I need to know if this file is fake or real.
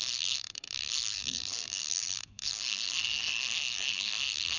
fake